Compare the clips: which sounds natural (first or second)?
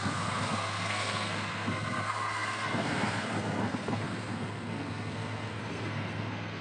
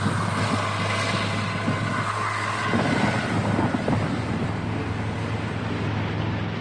second